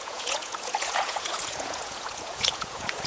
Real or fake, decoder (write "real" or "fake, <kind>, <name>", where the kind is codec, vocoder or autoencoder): fake, vocoder, Vocos